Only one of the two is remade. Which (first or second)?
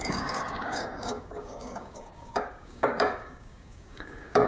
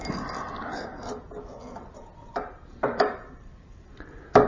first